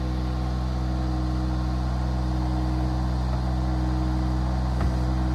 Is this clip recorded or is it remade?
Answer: recorded